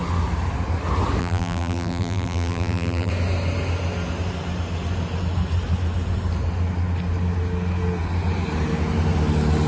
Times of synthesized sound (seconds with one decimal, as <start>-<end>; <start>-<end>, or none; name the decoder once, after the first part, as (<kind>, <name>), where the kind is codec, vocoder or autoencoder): 1.2-3.1 (vocoder, BigVGAN v2)